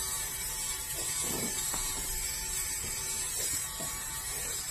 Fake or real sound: fake